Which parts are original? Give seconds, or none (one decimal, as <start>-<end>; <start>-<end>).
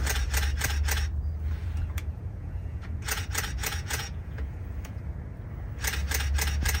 0.0-1.6; 3.2-3.6; 5.0-6.8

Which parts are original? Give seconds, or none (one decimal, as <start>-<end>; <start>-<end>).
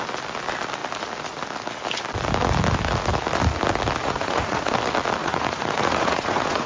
0.0-4.0; 4.7-5.2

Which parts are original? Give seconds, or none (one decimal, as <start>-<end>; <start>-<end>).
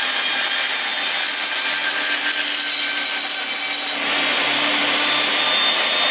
0.0-6.1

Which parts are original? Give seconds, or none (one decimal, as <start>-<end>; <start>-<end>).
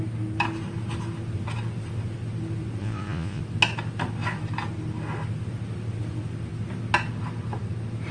0.0-2.8; 3.4-8.1